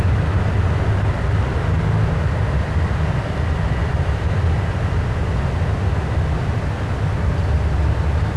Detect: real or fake real